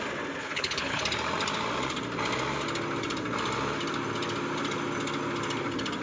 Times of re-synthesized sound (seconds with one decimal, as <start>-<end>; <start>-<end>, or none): 0.4-1.0